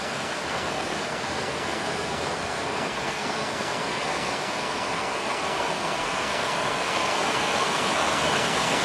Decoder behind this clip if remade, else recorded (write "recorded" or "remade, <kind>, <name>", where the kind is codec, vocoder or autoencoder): remade, codec, SNAC